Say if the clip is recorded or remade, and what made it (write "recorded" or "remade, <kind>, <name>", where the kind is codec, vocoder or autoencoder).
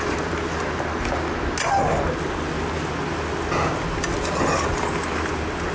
recorded